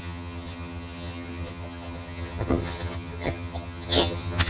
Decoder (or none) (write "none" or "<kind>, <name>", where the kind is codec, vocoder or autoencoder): vocoder, HiFi-GAN